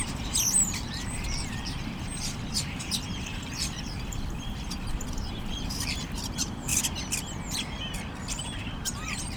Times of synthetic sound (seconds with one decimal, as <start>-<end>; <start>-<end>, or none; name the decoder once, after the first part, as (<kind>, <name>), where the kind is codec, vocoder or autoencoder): 0.0-6.7 (vocoder, BigVGAN v2); 8.3-9.4